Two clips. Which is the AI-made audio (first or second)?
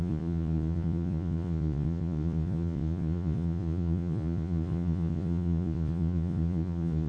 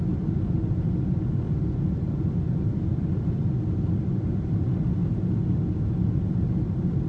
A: first